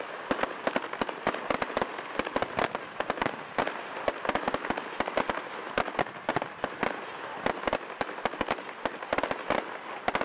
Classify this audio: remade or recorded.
recorded